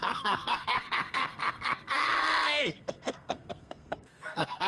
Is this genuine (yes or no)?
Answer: no